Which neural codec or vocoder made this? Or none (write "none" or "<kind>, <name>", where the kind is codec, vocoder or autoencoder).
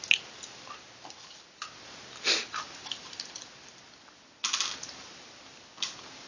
none